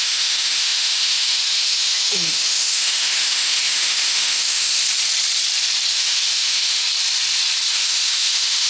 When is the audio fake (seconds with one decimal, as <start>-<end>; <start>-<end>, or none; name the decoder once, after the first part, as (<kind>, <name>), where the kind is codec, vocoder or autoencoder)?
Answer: 0.0-4.8 (autoencoder, DAC-VAE); 5.9-6.8; 7.7-8.7